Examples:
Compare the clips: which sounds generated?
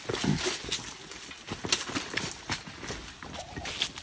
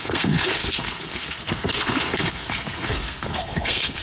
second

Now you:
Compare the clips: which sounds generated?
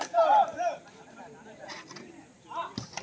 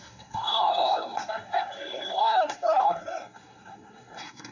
second